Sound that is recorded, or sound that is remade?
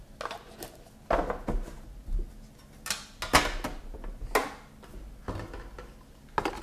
recorded